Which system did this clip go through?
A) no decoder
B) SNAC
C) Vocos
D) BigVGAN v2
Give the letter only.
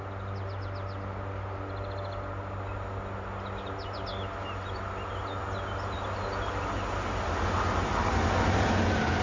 A